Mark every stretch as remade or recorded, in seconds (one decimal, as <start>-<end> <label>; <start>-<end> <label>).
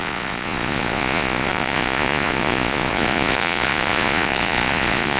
0.0-5.2 remade